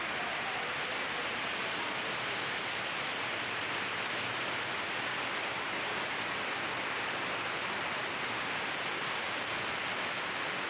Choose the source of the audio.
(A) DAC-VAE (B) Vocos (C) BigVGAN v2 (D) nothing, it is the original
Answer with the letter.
D